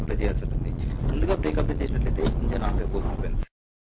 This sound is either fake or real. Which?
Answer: real